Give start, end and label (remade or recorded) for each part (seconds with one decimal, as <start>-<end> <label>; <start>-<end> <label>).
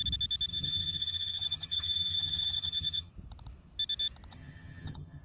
0.0-0.5 recorded; 0.5-3.1 remade; 3.1-4.3 recorded; 4.3-5.2 remade